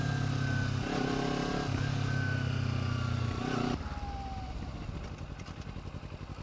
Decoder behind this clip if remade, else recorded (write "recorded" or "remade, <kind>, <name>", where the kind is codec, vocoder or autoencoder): recorded